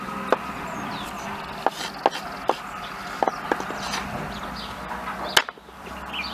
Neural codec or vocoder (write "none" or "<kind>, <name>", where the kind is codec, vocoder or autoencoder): none